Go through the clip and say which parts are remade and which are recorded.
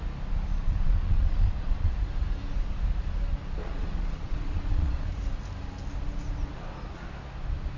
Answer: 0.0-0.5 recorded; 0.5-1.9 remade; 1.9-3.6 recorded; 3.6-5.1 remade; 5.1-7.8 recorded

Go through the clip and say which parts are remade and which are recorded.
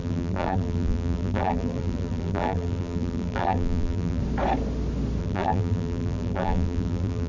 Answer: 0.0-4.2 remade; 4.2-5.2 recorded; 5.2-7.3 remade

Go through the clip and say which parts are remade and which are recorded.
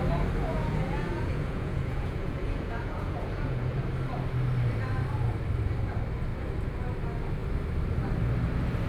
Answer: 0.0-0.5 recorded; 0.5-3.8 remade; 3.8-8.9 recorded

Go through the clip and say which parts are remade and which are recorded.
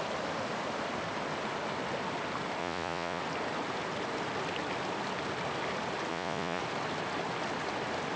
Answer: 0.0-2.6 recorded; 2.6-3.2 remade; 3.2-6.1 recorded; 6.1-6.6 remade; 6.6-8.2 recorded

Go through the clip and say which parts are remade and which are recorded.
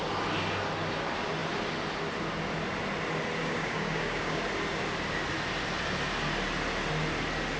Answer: 0.0-3.4 recorded; 3.4-4.4 remade; 4.4-7.6 recorded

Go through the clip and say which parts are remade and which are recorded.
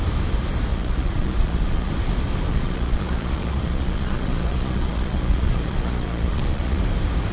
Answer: 0.0-0.7 recorded; 0.7-1.9 remade; 1.9-2.5 recorded; 2.5-6.8 remade; 6.8-7.3 recorded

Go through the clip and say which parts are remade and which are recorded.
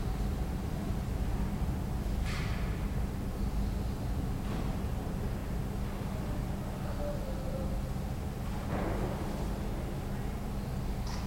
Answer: 0.0-11.3 recorded